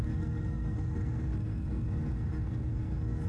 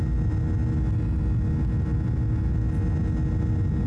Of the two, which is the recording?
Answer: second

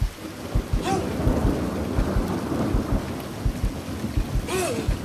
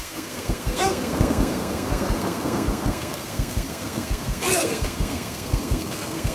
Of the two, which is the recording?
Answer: first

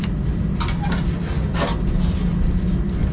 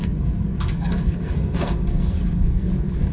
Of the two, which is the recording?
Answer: first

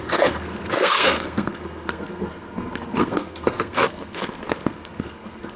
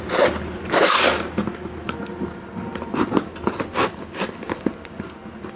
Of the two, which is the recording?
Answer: second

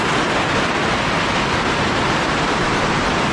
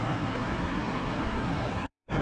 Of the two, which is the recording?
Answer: first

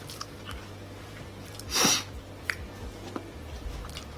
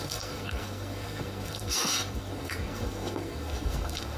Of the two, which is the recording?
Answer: first